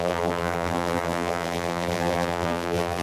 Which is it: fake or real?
fake